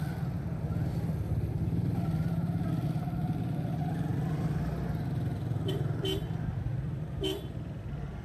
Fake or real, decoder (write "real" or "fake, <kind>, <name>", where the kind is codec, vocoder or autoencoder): real